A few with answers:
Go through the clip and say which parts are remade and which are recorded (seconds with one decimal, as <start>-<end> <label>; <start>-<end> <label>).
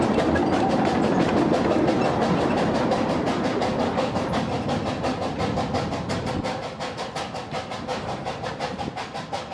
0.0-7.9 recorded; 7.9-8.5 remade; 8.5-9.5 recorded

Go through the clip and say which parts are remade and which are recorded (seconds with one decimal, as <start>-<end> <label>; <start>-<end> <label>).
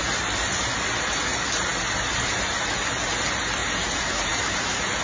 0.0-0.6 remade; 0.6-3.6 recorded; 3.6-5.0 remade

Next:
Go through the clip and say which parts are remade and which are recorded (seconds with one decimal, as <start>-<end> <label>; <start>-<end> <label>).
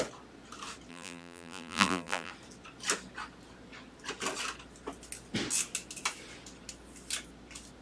0.0-0.9 recorded; 0.9-2.3 remade; 2.3-7.8 recorded